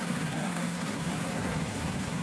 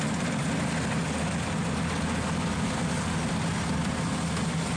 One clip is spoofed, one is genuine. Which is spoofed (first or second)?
first